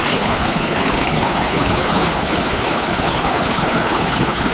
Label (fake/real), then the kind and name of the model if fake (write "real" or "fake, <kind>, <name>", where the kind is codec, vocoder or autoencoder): fake, codec, HILCodec